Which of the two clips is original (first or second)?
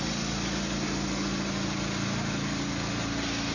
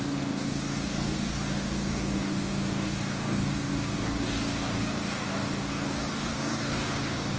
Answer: first